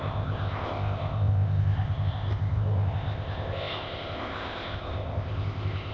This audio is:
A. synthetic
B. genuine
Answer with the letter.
A